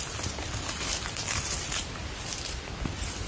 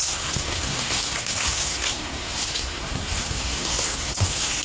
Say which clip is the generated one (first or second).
second